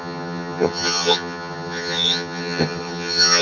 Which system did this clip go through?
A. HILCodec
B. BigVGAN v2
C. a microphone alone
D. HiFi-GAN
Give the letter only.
D